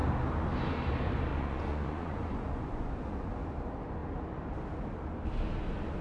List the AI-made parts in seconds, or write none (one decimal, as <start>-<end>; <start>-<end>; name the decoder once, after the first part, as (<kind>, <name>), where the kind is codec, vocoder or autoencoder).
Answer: 1.3-3.3 (vocoder, Vocos)